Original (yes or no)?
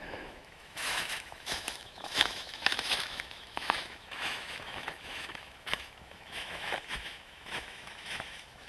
no